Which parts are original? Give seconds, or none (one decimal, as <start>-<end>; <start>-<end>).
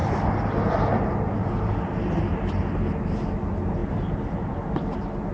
0.0-5.3